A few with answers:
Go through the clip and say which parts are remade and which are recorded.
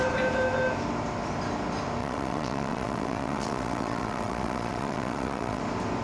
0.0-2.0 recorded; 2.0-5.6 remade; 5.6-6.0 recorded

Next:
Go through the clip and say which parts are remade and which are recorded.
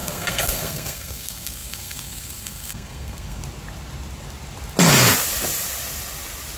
0.0-3.4 remade; 3.4-6.6 recorded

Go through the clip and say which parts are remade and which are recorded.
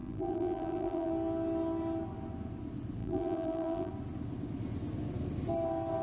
0.0-1.1 remade; 1.1-3.0 recorded; 3.0-3.9 remade; 3.9-6.0 recorded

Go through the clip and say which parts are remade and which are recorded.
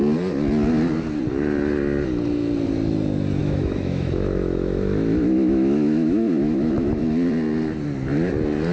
0.0-3.4 recorded; 3.4-7.0 remade; 7.0-8.7 recorded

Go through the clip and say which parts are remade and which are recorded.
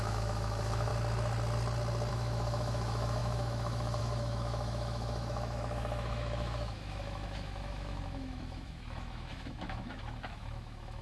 0.0-0.9 remade; 0.9-2.1 recorded; 2.1-11.0 remade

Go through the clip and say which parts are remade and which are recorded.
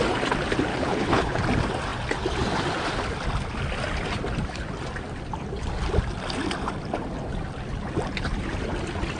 0.0-0.7 recorded; 0.7-1.4 remade; 1.4-9.2 recorded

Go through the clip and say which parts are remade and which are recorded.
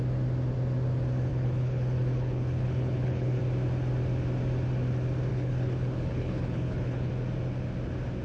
0.0-1.3 recorded; 1.3-3.4 remade; 3.4-5.3 recorded; 5.3-7.1 remade; 7.1-8.2 recorded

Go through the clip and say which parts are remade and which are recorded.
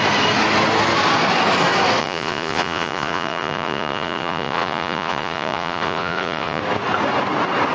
0.0-2.0 recorded; 2.0-6.6 remade; 6.6-7.7 recorded